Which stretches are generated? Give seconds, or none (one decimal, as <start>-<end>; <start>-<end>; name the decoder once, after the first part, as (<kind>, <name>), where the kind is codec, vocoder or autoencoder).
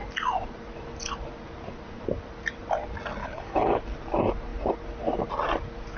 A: 3.2-3.8 (codec, HILCodec)